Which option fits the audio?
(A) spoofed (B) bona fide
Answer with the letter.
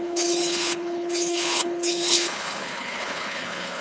A